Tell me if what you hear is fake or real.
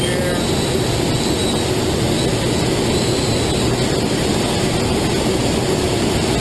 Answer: real